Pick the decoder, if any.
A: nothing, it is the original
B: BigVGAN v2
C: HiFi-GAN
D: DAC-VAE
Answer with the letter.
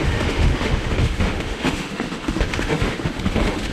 D